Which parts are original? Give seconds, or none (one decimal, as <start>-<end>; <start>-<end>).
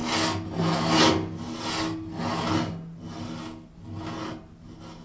0.0-5.0